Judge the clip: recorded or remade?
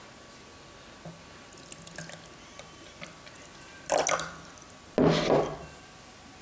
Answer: recorded